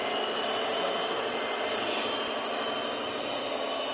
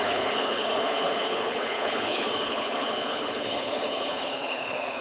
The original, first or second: first